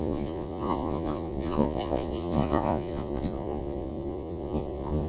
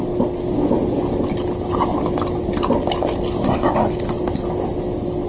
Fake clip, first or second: first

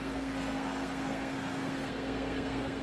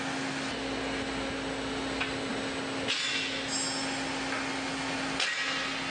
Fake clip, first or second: first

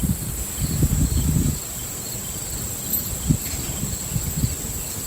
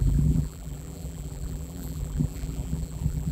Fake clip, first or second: second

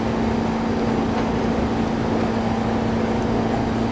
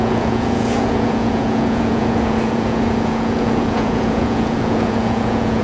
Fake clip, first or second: second